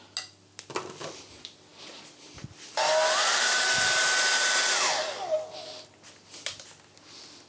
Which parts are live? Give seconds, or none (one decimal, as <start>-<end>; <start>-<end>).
0.0-7.5